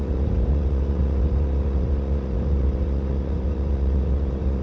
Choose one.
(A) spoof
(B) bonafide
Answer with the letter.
A